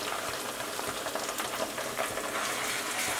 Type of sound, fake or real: real